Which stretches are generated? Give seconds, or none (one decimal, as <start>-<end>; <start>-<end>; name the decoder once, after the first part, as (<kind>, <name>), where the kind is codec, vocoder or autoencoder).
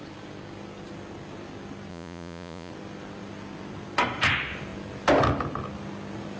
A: 1.9-2.7 (vocoder, Vocos)